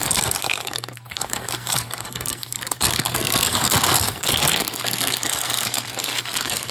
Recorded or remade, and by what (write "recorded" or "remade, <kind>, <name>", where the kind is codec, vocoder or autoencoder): remade, codec, SNAC